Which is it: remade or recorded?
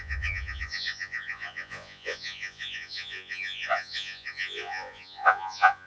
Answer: remade